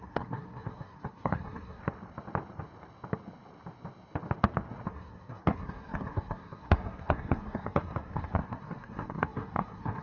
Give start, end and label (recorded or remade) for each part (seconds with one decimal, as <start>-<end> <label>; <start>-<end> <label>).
0.0-1.8 remade; 1.8-4.9 recorded; 4.9-10.0 remade